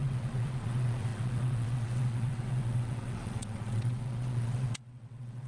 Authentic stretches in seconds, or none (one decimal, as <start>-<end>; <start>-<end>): none